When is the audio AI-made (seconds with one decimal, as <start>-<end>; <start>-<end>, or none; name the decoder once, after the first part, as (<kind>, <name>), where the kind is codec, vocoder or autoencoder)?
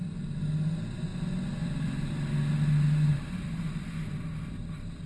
none